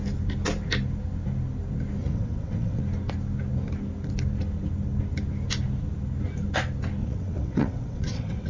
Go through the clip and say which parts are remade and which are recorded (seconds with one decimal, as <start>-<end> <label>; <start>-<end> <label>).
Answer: 0.0-2.0 recorded; 2.0-2.8 remade; 2.8-7.0 recorded; 7.0-8.5 remade